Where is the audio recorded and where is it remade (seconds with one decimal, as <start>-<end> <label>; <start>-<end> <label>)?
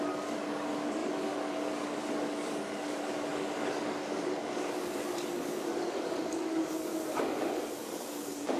0.0-8.6 remade